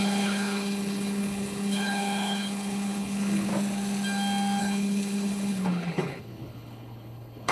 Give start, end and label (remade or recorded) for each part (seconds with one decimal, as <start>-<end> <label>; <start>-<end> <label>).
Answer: 0.0-3.5 remade; 3.5-4.6 recorded; 4.6-7.5 remade